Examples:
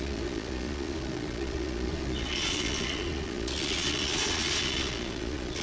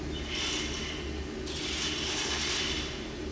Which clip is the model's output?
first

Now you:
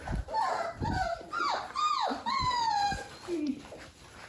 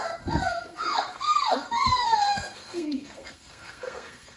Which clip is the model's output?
second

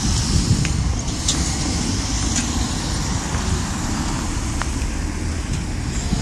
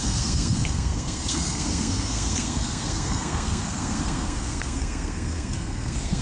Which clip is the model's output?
second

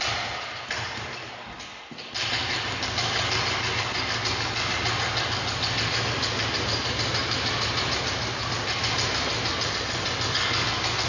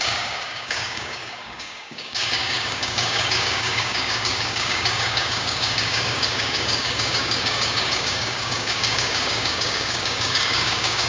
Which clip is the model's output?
second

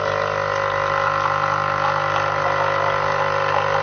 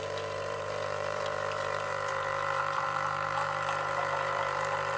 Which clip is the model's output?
second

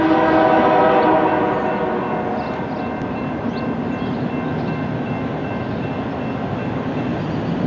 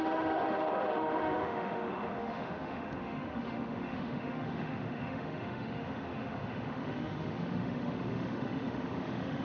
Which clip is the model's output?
second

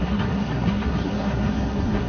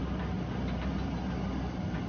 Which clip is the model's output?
first